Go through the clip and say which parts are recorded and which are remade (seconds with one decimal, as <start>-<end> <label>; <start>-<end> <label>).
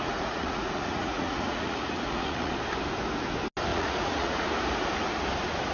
0.0-2.5 remade; 2.5-3.7 recorded; 3.7-4.5 remade; 4.5-5.7 recorded